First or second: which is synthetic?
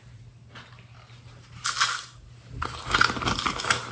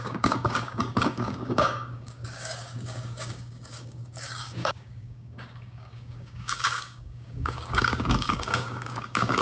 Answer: second